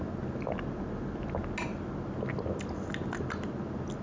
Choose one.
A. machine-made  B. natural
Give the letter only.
B